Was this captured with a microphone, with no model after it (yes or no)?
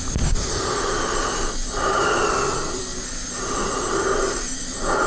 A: yes